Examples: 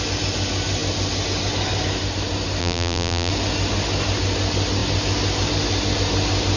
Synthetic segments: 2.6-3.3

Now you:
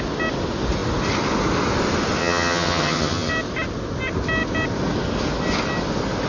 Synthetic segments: 2.2-3.3

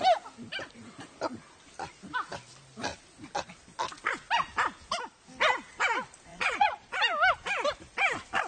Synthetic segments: 6.3-6.9